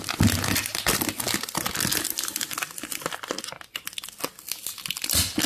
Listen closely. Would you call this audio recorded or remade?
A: recorded